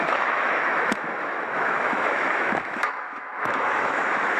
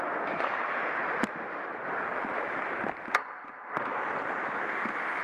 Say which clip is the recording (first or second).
second